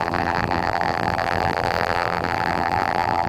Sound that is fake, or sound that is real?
fake